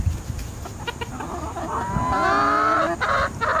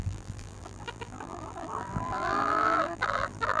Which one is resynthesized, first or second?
second